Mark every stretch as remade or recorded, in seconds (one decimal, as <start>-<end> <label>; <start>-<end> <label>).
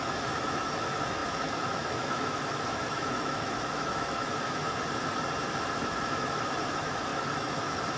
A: 0.0-4.6 remade; 4.6-5.5 recorded; 5.5-8.0 remade